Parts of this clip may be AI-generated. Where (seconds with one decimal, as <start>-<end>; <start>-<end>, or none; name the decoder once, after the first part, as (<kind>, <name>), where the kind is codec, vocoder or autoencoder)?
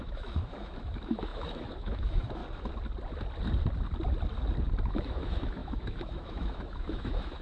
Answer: 0.0-2.4 (autoencoder, DAC-VAE); 4.8-7.4